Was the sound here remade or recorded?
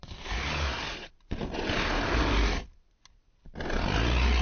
recorded